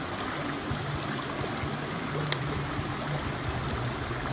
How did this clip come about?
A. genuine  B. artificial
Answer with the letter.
A